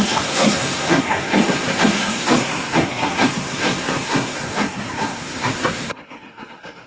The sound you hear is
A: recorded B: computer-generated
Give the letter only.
B